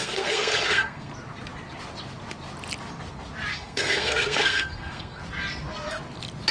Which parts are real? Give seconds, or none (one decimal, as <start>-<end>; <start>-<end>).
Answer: 1.1-3.5; 5.2-6.5